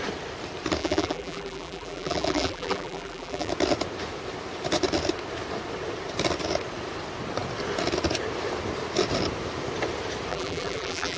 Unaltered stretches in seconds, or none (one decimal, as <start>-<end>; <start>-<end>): 0.0-0.8; 3.5-10.3